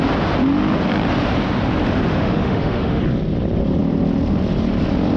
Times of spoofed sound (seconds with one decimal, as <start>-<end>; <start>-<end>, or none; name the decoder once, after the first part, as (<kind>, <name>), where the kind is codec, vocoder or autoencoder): 2.1-3.0 (autoencoder, DAC-VAE)